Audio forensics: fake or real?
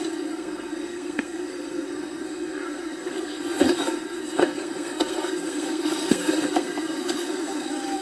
fake